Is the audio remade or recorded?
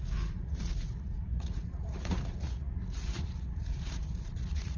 remade